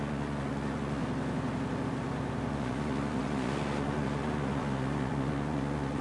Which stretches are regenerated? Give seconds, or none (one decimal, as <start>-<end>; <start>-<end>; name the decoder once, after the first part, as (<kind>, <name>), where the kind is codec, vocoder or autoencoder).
0.0-1.0 (vocoder, Vocos); 2.5-6.0